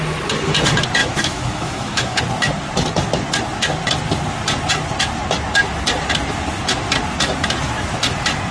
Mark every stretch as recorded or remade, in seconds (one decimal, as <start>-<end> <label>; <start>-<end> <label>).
0.0-1.0 recorded; 1.0-2.2 remade; 2.2-8.5 recorded